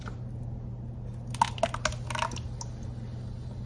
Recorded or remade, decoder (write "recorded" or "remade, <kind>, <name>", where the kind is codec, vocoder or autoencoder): recorded